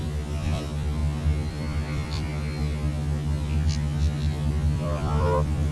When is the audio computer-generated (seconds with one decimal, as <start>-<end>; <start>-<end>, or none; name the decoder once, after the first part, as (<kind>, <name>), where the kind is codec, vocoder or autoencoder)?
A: 0.0-1.0 (vocoder, BigVGAN v2); 1.5-2.3; 4.5-5.7